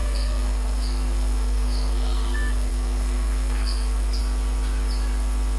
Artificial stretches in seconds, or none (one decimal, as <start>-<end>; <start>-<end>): 0.0-4.2